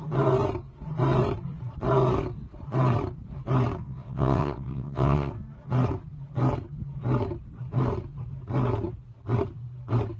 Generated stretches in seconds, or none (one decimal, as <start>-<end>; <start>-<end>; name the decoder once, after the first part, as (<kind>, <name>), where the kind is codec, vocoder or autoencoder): 3.8-5.3 (vocoder, WaveNeXt)